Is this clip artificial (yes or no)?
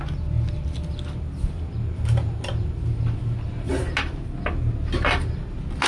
no